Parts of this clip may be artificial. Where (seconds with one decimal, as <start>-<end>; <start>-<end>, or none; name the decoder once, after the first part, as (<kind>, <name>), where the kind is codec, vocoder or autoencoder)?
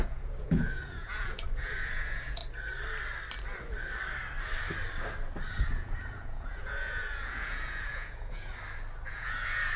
0.0-2.4 (vocoder, Vocos); 5.5-8.5; 9.1-9.8